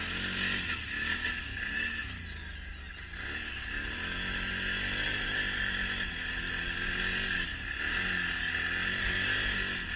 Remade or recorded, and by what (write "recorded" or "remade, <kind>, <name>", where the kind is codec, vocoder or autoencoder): recorded